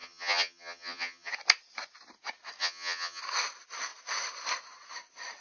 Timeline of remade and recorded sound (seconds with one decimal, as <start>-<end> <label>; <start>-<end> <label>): 0.0-1.3 remade; 1.3-2.6 recorded; 2.6-3.2 remade; 3.2-5.4 recorded